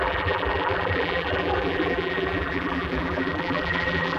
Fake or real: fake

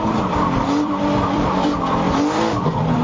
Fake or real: fake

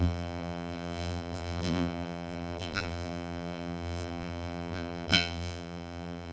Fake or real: fake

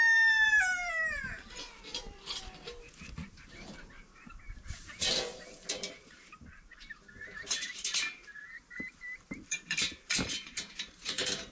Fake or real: fake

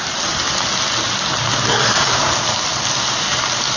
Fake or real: real